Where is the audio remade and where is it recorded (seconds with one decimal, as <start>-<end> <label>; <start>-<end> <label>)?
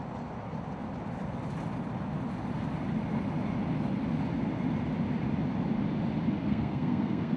0.0-6.4 recorded; 6.4-7.4 remade